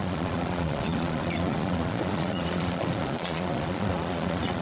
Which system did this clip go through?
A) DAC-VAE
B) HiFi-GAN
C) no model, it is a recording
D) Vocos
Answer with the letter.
D